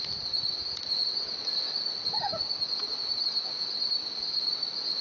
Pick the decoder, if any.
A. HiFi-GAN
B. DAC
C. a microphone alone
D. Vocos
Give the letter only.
C